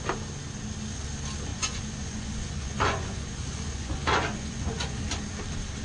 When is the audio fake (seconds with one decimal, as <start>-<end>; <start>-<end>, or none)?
1.5-5.0